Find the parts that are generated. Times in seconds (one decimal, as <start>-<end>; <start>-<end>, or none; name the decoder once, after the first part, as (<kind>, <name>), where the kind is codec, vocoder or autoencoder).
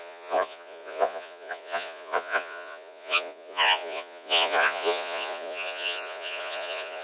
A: 0.0-7.0 (vocoder, Vocos)